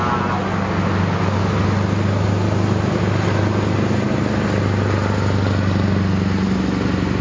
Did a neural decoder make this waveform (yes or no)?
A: no